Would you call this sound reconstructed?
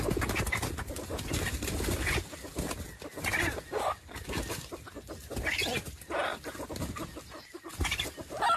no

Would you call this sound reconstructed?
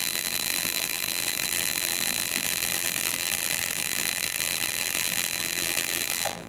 yes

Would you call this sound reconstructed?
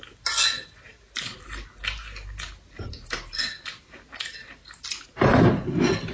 no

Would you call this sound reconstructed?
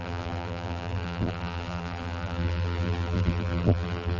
yes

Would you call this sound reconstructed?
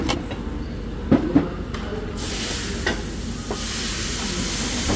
no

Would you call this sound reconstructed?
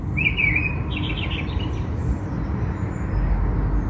no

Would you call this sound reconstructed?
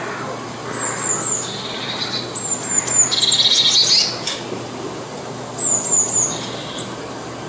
no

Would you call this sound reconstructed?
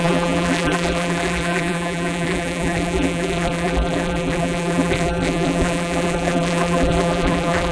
yes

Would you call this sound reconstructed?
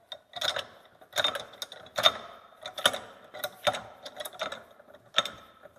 no